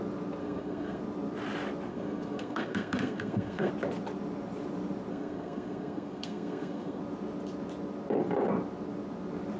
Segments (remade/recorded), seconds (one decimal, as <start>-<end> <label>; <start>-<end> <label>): 0.0-0.4 recorded; 0.4-1.0 remade; 1.0-1.9 recorded; 1.9-3.7 remade; 3.7-5.1 recorded; 5.1-7.0 remade; 7.0-9.6 recorded